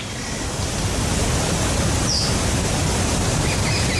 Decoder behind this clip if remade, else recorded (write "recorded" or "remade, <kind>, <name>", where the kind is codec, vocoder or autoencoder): recorded